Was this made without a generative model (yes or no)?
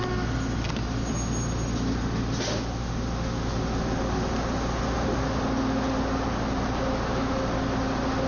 yes